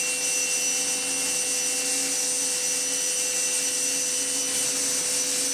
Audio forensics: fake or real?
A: real